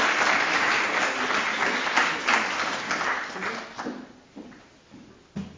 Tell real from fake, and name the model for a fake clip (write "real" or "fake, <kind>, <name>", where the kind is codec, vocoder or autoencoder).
real